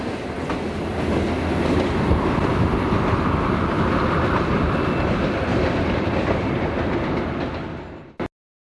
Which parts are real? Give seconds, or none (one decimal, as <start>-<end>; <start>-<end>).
0.0-8.8